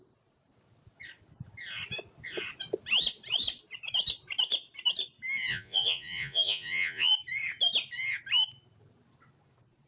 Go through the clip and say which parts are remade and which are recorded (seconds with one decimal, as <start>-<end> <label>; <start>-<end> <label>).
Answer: 0.0-5.5 recorded; 5.5-7.1 remade; 7.1-9.9 recorded